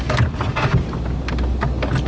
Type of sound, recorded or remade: recorded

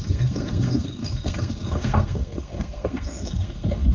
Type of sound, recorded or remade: remade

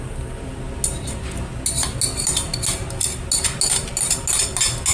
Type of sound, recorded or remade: recorded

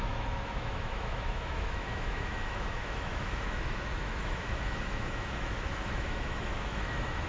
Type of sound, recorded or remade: remade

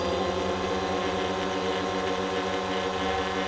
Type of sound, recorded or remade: recorded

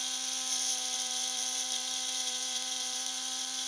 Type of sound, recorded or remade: remade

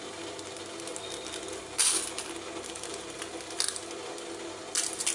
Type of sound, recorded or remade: recorded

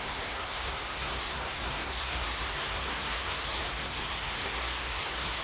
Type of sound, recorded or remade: remade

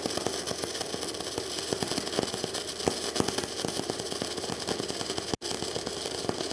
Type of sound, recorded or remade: recorded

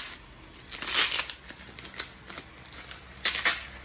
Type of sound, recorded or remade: recorded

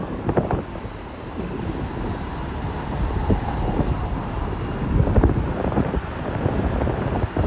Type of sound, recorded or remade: remade